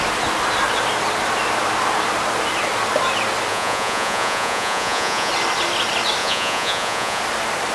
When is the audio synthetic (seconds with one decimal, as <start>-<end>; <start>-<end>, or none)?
3.5-5.3; 6.2-7.2